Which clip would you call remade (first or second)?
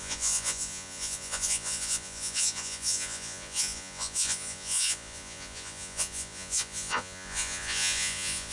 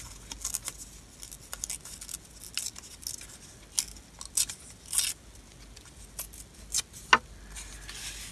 first